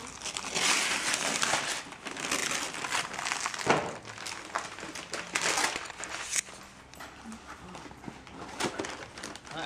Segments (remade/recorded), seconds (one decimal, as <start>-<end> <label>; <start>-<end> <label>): 0.0-9.7 recorded

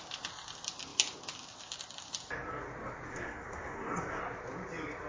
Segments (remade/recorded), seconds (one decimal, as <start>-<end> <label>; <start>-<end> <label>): 0.0-3.1 recorded; 3.1-4.2 remade; 4.2-5.1 recorded

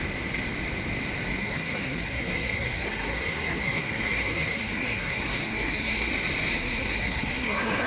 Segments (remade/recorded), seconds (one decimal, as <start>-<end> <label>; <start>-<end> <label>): 0.0-1.4 recorded; 1.4-6.1 remade; 6.1-6.5 recorded; 6.5-7.9 remade

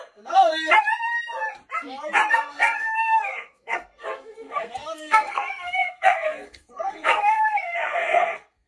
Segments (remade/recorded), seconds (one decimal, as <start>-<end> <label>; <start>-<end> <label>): 0.0-0.5 remade; 0.5-2.3 recorded; 2.3-8.7 remade

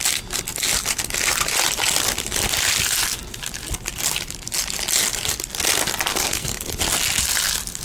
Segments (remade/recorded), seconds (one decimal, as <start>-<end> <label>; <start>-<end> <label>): 0.0-6.1 recorded; 6.1-6.7 remade; 6.7-7.8 recorded

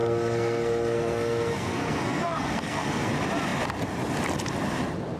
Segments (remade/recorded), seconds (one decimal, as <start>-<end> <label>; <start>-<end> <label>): 0.0-3.1 remade; 3.1-5.2 recorded

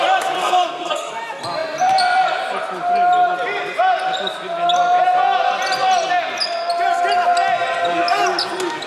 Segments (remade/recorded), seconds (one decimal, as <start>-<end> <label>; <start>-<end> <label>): 0.0-0.4 recorded; 0.4-1.1 remade; 1.1-8.9 recorded